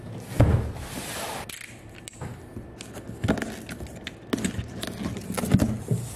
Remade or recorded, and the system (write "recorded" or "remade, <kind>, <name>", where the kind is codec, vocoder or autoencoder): recorded